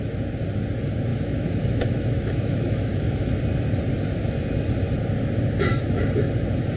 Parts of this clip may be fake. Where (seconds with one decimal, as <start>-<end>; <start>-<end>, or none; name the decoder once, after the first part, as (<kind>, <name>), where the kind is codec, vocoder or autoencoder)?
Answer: 1.1-3.3 (autoencoder, DAC-VAE); 5.7-6.8